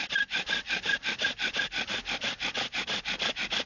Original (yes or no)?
yes